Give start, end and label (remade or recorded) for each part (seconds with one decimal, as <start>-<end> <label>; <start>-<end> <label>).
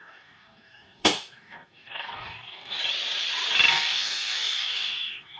0.0-2.8 remade; 2.8-3.7 recorded; 3.7-5.4 remade